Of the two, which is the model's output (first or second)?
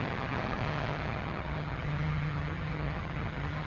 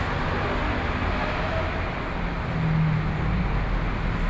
first